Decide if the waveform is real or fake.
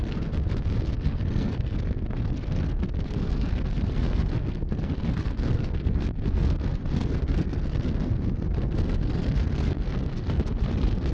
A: fake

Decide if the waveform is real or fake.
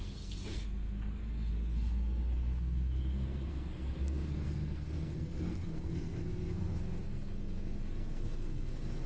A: fake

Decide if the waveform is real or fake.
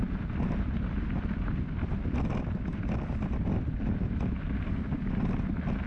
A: real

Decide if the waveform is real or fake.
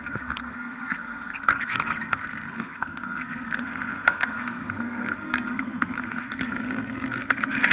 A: fake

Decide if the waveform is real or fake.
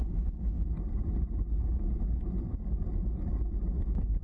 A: real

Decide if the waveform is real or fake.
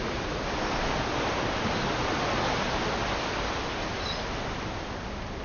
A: real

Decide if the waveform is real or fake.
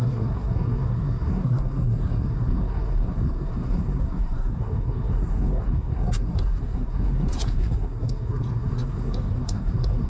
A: fake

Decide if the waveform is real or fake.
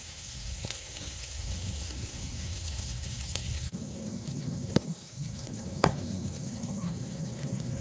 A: fake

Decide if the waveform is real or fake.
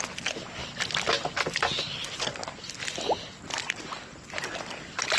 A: real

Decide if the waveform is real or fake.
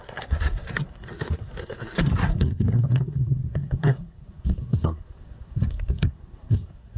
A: fake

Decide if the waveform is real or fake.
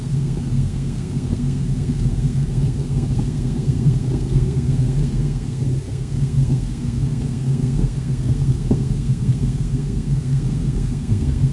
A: fake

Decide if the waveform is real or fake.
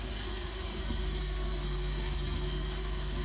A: fake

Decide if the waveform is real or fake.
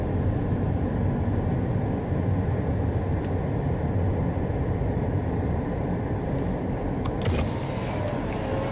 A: real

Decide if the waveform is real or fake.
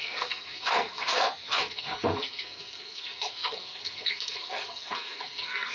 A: fake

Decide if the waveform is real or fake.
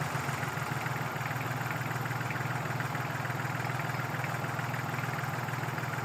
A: real